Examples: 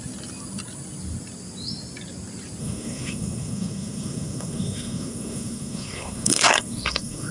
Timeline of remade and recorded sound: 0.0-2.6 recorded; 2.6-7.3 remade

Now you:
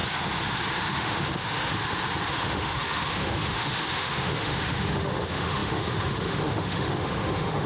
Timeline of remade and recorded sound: 0.0-0.7 recorded; 0.7-1.7 remade; 1.7-2.3 recorded; 2.3-7.7 remade